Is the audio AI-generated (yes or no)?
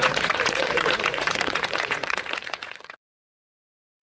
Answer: yes